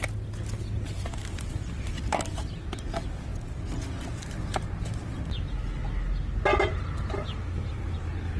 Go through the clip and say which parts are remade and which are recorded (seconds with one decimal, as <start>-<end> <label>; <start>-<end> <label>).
0.0-8.4 recorded

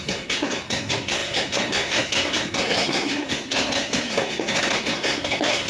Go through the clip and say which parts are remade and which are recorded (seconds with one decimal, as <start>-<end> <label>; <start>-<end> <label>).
0.0-5.7 remade

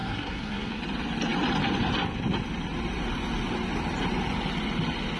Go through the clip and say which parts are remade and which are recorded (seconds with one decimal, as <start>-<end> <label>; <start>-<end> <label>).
0.0-0.8 remade; 0.8-5.2 recorded

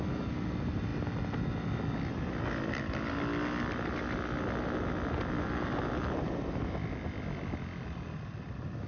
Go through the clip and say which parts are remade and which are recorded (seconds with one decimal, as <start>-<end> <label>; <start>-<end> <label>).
0.0-8.9 recorded

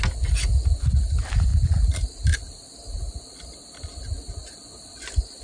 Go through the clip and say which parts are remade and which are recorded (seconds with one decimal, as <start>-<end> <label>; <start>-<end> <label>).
0.0-5.4 recorded